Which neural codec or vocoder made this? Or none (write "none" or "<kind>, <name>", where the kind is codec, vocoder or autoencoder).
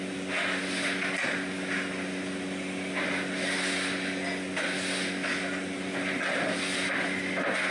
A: none